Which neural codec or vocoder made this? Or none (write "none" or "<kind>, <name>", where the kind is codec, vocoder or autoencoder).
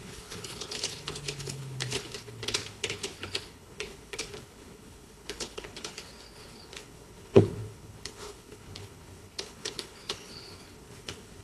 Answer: codec, HILCodec